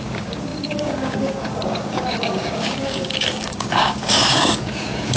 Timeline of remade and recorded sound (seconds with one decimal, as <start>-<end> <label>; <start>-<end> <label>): 0.0-5.2 remade

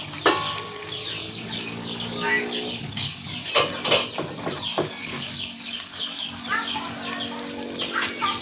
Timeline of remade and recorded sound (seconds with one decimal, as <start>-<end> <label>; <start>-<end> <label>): 0.0-1.2 recorded; 1.2-3.5 remade; 3.5-4.7 recorded; 4.7-6.4 remade; 6.4-8.4 recorded